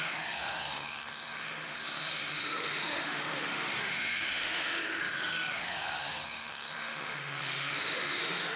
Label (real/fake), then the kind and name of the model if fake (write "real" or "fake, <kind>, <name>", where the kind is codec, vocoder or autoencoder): fake, autoencoder, DAC-VAE